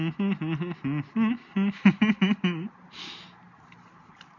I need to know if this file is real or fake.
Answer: real